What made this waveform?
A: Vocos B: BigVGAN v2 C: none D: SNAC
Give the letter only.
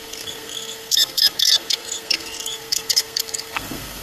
D